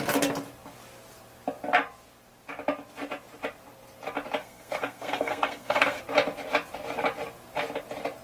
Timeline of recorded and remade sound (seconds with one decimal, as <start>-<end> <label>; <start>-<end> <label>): 0.0-4.4 recorded; 4.4-6.0 remade; 6.0-8.2 recorded